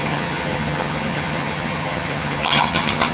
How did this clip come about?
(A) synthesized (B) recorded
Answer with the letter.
A